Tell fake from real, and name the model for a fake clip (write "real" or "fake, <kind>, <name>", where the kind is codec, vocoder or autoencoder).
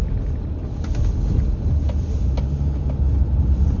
real